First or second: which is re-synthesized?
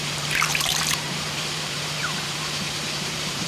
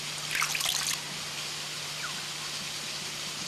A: first